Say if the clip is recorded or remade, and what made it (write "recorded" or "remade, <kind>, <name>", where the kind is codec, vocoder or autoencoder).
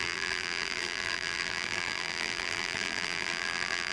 remade, vocoder, BigVGAN v2